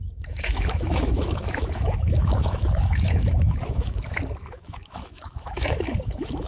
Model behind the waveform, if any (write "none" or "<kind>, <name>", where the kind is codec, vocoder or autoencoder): autoencoder, DAC-VAE